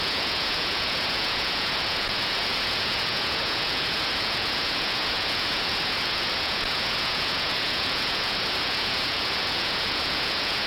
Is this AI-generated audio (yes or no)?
yes